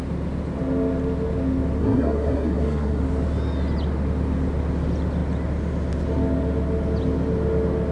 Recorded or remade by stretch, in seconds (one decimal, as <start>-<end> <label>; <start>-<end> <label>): 0.0-1.8 recorded; 1.8-3.0 remade; 3.0-7.9 recorded